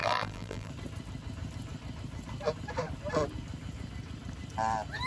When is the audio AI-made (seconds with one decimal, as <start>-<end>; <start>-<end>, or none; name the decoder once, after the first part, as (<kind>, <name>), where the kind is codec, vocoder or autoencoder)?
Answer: 0.0-0.7 (vocoder, BigVGAN v2)